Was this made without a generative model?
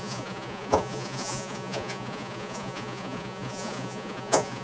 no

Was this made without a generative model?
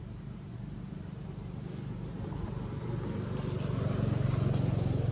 yes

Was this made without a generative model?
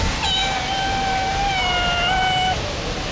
yes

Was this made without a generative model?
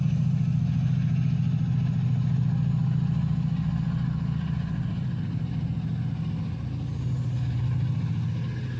yes